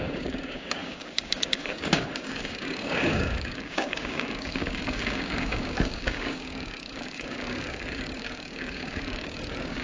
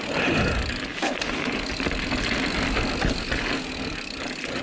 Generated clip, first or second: first